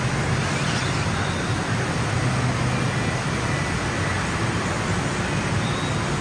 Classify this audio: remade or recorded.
recorded